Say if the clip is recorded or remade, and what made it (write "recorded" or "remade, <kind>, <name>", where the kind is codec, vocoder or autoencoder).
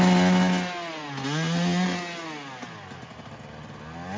recorded